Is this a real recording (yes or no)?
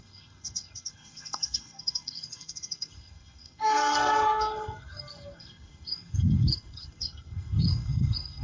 no